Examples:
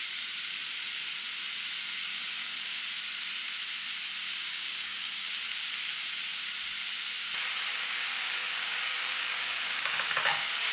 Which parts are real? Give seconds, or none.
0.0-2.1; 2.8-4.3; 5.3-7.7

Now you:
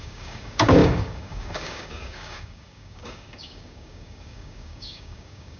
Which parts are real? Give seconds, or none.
none

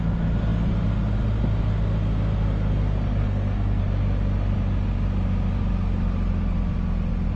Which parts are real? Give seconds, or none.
0.0-3.2; 3.8-7.4

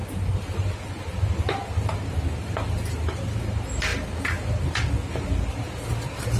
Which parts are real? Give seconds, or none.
0.0-6.4

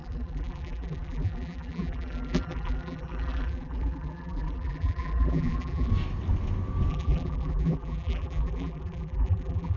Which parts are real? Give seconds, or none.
5.9-6.9

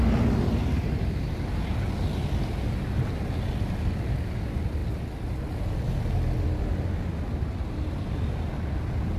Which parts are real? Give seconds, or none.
0.0-9.2

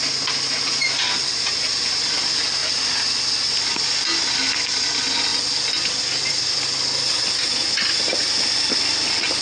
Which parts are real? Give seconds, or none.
0.0-9.4